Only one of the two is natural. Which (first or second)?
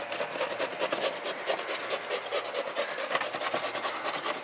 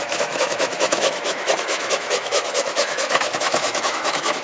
first